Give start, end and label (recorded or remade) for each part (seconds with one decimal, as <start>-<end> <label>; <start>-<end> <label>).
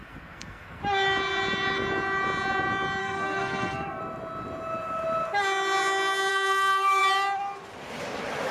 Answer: 0.0-0.8 remade; 0.8-3.0 recorded; 3.0-4.0 remade; 4.0-6.3 recorded; 6.3-7.0 remade; 7.0-8.5 recorded